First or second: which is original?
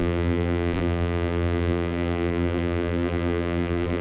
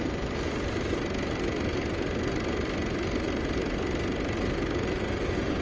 second